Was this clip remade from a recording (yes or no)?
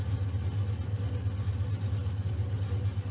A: no